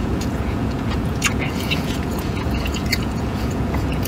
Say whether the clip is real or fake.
fake